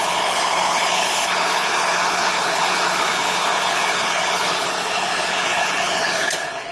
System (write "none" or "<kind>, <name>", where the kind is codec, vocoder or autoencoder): codec, HILCodec